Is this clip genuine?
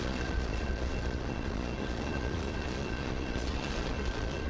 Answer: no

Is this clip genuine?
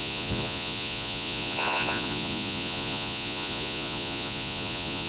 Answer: no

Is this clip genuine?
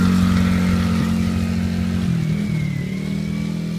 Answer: yes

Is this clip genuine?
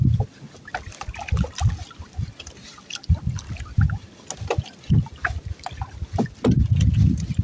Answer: yes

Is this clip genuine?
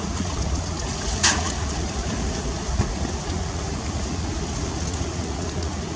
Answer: no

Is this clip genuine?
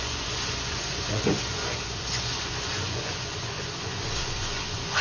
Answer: no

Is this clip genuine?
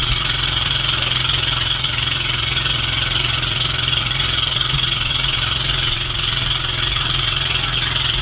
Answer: no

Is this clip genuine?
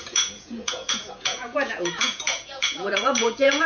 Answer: no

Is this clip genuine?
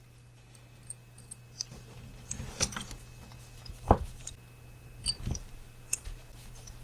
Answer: yes